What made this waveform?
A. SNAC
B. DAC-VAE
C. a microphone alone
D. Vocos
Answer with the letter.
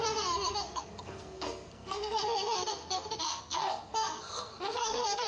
A